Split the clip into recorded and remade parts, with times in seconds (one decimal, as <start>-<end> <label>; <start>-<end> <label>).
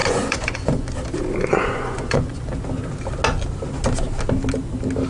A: 0.0-0.9 remade; 0.9-1.5 recorded; 1.5-2.5 remade; 2.5-5.1 recorded